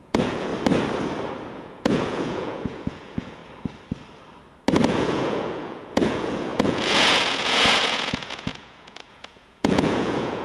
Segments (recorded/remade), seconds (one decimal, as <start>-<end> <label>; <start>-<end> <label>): 0.0-0.5 remade; 0.5-1.5 recorded; 1.5-3.4 remade; 3.4-4.9 recorded; 4.9-10.4 remade